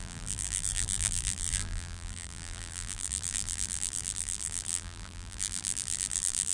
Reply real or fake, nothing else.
fake